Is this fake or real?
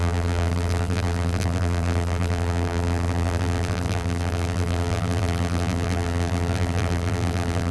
fake